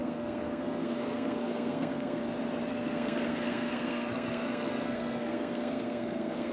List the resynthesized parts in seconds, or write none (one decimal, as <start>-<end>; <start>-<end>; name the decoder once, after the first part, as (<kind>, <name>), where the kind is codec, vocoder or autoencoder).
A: 0.0-2.2 (codec, SNAC); 2.7-6.5